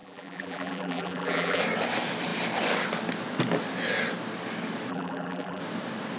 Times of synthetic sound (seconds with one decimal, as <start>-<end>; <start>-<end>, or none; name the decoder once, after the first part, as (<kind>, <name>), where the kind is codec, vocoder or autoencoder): 0.0-1.6 (vocoder, BigVGAN v2); 4.9-5.6